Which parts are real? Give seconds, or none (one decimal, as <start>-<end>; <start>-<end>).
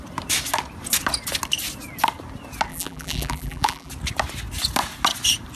0.0-2.7; 3.9-5.5